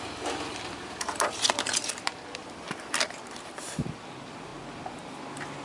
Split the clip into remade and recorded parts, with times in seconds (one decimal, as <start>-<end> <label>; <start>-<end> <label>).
0.0-5.6 recorded